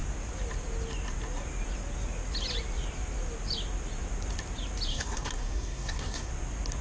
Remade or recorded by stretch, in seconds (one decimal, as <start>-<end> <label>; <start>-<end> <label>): 0.0-4.9 recorded; 4.9-6.3 remade; 6.3-6.8 recorded